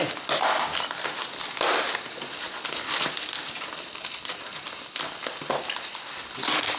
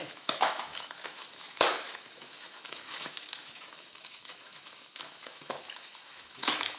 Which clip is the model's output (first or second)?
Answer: second